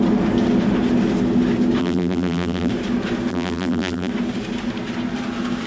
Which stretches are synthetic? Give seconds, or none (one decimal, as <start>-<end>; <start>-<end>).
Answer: 1.8-2.7; 3.3-4.1